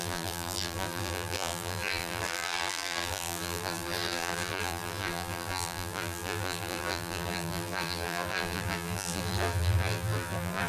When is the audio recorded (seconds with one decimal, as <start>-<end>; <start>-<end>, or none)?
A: none